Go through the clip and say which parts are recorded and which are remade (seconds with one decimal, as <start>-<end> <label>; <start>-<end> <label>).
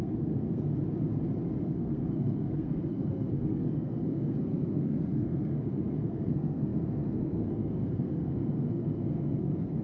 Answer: 0.0-0.7 remade; 0.7-1.6 recorded; 1.6-9.8 remade